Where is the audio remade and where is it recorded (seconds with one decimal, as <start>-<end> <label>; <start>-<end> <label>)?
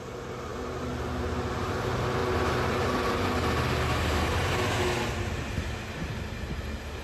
0.0-7.0 recorded